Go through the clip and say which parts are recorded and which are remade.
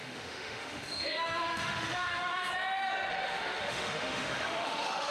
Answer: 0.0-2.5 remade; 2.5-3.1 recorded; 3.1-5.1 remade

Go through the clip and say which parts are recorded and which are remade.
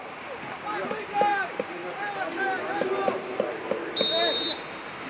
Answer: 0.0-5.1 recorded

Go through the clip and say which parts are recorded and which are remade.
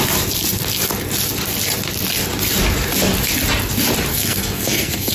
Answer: 0.0-4.1 recorded; 4.1-5.1 remade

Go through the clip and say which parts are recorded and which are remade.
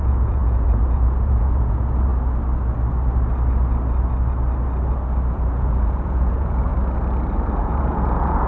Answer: 0.0-2.1 remade; 2.1-5.3 recorded; 5.3-6.7 remade; 6.7-7.6 recorded; 7.6-8.5 remade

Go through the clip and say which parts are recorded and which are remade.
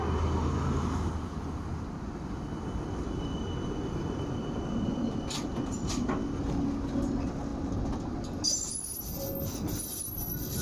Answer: 0.0-10.6 recorded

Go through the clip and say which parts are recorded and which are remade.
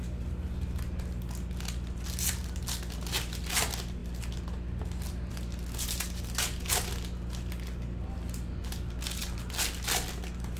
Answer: 0.0-4.0 recorded; 4.0-5.3 remade; 5.3-10.6 recorded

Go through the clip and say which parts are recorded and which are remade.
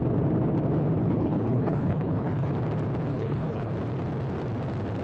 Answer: 0.0-1.0 recorded; 1.0-2.5 remade; 2.5-3.1 recorded; 3.1-3.7 remade; 3.7-5.0 recorded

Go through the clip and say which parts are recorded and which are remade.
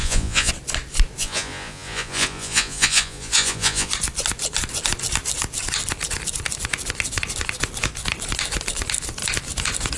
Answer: 0.0-0.5 remade; 0.5-1.2 recorded; 1.2-3.9 remade; 3.9-10.0 recorded